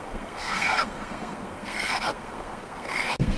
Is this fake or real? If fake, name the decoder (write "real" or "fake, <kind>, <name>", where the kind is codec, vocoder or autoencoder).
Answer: fake, codec, SNAC